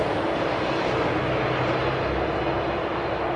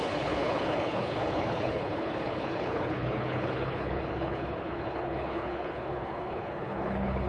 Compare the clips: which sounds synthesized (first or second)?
second